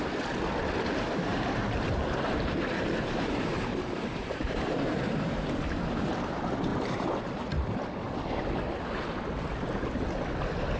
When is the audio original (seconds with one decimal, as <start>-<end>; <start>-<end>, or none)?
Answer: 0.0-1.3; 5.6-6.7; 7.2-10.8